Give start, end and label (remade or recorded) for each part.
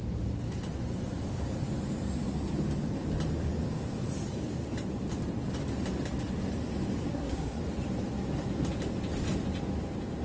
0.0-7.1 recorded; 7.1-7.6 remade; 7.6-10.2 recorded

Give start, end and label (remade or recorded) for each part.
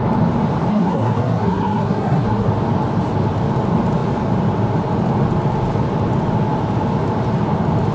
0.0-0.7 recorded; 0.7-2.5 remade; 2.5-7.9 recorded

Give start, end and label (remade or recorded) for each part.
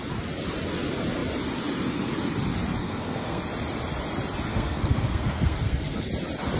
0.0-2.8 recorded; 2.8-3.4 remade; 3.4-4.5 recorded; 4.5-6.1 remade; 6.1-6.6 recorded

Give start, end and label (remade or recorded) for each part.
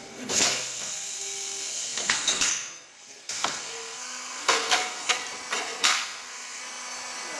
0.0-5.2 remade; 5.2-5.8 recorded; 5.8-6.6 remade; 6.6-7.4 recorded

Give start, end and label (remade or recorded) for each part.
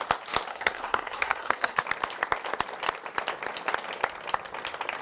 0.0-0.5 recorded; 0.5-1.8 remade; 1.8-5.0 recorded